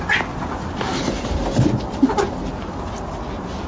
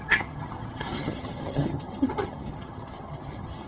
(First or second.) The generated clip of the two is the second